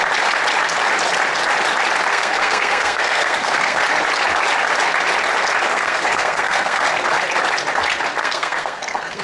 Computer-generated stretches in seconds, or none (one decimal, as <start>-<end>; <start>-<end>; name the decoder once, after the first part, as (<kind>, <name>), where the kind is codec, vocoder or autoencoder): 2.1-3.8 (codec, SNAC); 5.7-6.8; 8.2-9.2